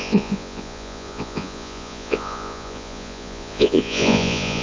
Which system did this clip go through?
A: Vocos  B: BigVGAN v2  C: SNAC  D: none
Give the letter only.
A